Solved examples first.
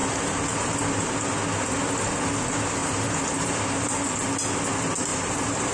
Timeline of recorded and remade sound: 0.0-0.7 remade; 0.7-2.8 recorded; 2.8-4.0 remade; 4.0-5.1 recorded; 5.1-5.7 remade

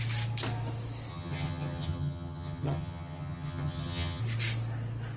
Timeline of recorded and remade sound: 0.0-1.1 recorded; 1.1-4.2 remade; 4.2-5.2 recorded

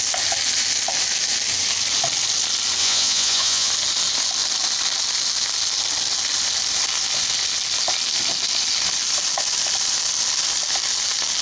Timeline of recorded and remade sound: 0.0-2.8 recorded; 2.8-3.7 remade; 3.7-11.4 recorded

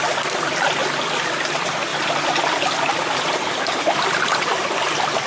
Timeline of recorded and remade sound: 0.0-0.8 remade; 0.8-1.5 recorded; 1.5-5.3 remade

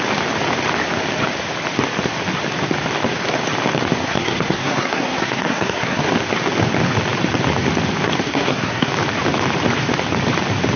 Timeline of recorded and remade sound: 0.0-4.0 recorded; 4.0-6.0 remade; 6.0-8.3 recorded; 8.3-8.9 remade; 8.9-10.8 recorded

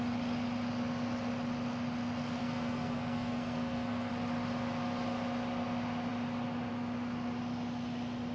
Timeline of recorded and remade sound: 0.0-2.4 recorded; 2.4-4.1 remade; 4.1-8.3 recorded

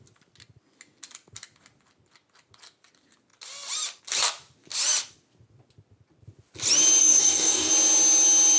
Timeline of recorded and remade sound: 0.0-7.0 recorded; 7.0-7.7 remade; 7.7-8.6 recorded

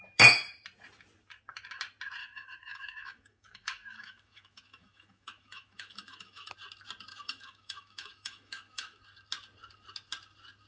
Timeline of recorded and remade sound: 0.0-2.2 recorded; 2.2-6.5 remade; 6.5-7.1 recorded; 7.1-9.0 remade; 9.0-10.7 recorded